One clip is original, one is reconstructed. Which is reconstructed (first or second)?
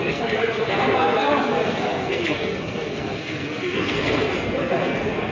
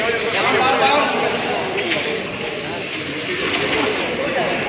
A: first